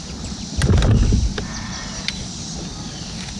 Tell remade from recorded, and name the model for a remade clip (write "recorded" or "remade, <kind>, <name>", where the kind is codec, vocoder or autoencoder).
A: recorded